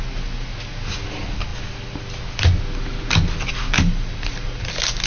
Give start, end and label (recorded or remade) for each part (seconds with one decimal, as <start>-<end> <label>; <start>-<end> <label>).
0.0-5.1 recorded